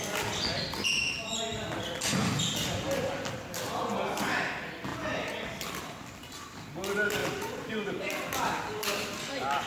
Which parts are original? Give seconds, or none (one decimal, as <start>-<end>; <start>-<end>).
0.0-9.7